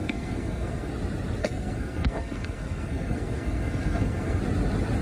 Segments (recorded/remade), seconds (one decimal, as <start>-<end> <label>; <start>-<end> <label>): 0.0-0.9 remade; 0.9-1.4 recorded; 1.4-4.4 remade; 4.4-5.0 recorded